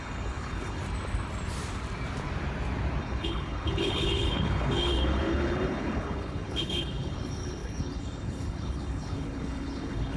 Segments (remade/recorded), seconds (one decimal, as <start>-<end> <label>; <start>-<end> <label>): 0.0-0.8 remade; 0.8-3.0 recorded; 3.0-10.2 remade